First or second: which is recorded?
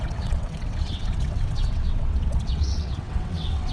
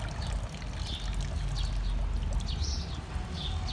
second